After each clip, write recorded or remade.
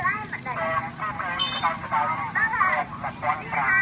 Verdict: recorded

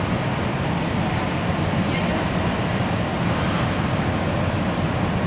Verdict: recorded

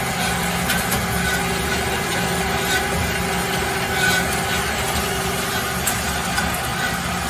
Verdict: recorded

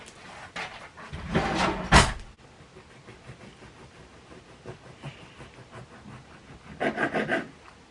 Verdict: recorded